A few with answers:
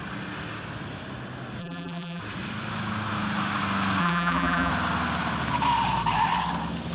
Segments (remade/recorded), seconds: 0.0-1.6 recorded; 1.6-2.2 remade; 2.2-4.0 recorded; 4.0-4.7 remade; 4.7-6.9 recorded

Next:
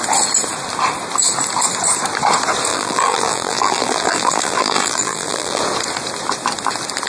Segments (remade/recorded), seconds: 0.0-2.7 recorded; 2.7-5.6 remade; 5.6-7.1 recorded